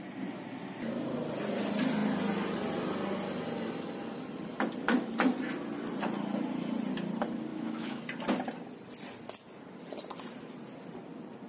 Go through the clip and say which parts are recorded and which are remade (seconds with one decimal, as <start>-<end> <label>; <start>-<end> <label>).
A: 0.0-7.5 recorded; 7.5-8.0 remade; 8.0-11.5 recorded